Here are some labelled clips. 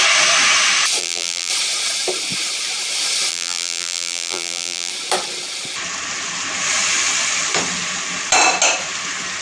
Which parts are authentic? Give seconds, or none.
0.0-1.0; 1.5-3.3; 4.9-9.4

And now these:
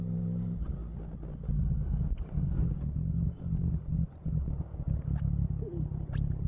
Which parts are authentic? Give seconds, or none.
0.0-6.5